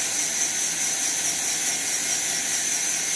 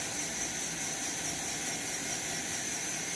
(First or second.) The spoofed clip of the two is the second